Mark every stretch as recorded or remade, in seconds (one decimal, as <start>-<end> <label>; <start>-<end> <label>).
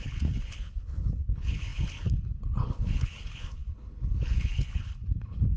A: 0.0-5.6 remade